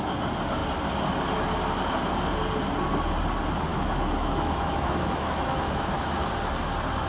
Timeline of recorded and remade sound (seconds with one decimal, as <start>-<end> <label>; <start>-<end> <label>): 0.0-3.7 recorded; 3.7-6.3 remade; 6.3-7.1 recorded